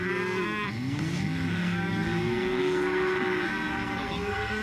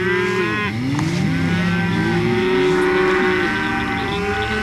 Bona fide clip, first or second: second